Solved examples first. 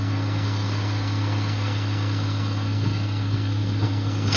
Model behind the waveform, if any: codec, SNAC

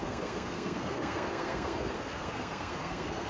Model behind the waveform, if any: codec, SNAC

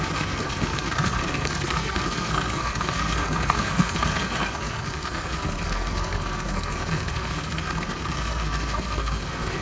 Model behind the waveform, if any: codec, SNAC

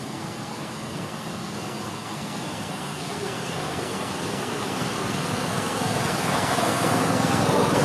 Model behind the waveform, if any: codec, SNAC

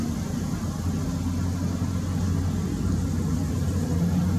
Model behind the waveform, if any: none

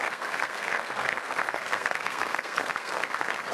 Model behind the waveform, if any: codec, SNAC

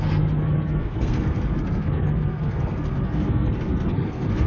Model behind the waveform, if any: codec, SNAC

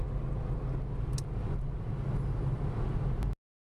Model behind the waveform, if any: none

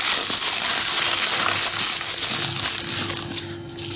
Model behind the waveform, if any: none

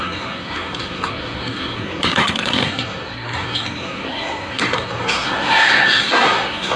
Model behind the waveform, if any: codec, SNAC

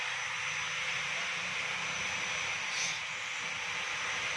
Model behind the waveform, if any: none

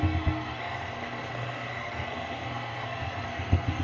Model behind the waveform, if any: codec, SNAC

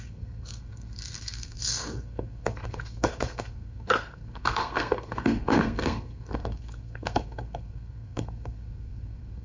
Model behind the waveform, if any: codec, SNAC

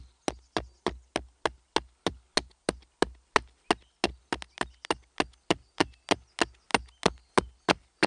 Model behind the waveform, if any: none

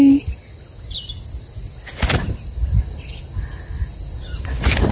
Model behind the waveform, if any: none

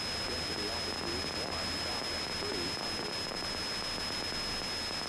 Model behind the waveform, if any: none